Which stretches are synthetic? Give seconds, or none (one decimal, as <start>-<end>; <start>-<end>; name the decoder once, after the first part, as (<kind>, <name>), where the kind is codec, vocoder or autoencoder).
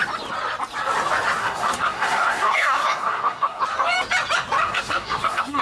1.4-3.6 (codec, SNAC); 4.6-5.6